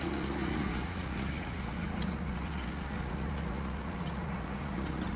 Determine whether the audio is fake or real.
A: fake